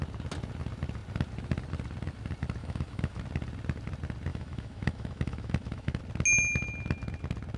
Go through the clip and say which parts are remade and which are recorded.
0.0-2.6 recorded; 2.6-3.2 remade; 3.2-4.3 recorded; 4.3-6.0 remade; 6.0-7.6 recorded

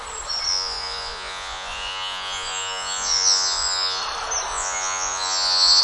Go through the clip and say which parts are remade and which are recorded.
0.0-0.5 recorded; 0.5-4.0 remade; 4.0-4.5 recorded; 4.5-5.8 remade

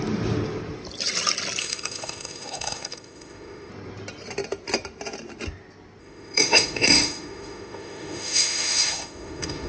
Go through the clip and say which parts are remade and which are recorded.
0.0-1.6 recorded; 1.6-3.7 remade; 3.7-6.0 recorded; 6.0-9.7 remade